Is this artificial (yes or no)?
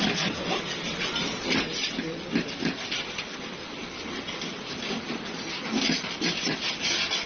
yes